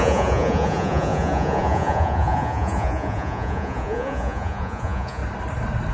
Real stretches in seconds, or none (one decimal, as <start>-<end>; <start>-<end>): 5.2-5.9